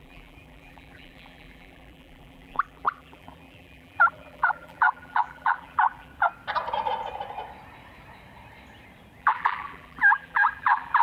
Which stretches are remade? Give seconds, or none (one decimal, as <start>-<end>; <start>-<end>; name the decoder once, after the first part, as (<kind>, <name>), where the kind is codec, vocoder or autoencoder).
0.0-6.1 (vocoder, BigVGAN v2); 9.2-11.0